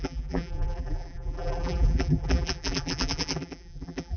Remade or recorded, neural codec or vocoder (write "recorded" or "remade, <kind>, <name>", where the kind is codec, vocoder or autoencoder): remade, vocoder, BigVGAN v2